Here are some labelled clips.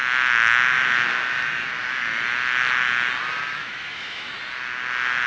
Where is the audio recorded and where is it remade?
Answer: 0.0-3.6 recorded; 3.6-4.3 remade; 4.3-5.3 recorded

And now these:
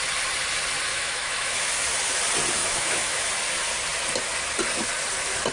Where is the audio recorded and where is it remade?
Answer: 0.0-0.9 recorded; 0.9-1.7 remade; 1.7-2.6 recorded; 2.6-3.3 remade; 3.3-5.5 recorded

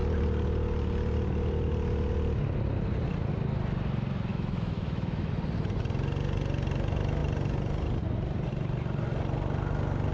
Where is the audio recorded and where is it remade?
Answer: 0.0-4.3 recorded; 4.3-5.3 remade; 5.3-10.1 recorded